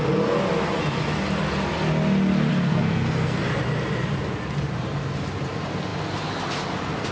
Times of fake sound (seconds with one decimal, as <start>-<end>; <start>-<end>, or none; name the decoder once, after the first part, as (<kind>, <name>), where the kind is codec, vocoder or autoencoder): 2.5-3.4 (codec, SNAC)